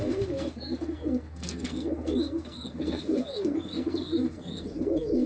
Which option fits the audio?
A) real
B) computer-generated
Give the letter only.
B